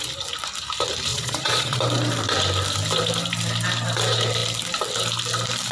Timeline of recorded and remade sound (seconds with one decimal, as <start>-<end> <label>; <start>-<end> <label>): 0.0-1.1 recorded; 1.1-1.8 remade; 1.8-5.7 recorded